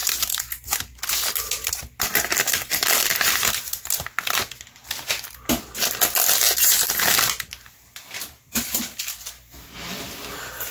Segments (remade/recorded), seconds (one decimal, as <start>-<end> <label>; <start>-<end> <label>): 0.0-10.7 recorded